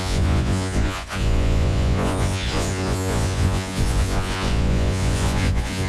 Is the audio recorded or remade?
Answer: remade